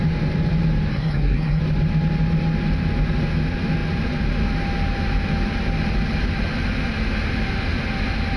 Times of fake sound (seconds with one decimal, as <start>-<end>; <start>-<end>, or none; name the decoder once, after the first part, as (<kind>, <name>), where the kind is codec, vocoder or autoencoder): 0.9-1.6 (codec, SNAC)